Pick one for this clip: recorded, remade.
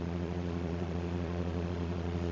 remade